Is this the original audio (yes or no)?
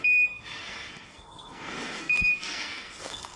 no